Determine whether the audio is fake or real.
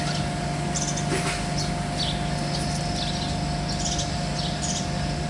real